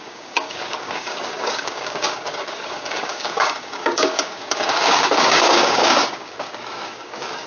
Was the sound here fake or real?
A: fake